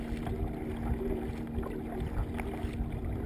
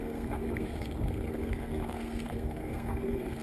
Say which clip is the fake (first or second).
second